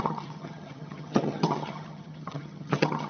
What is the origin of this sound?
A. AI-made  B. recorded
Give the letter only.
A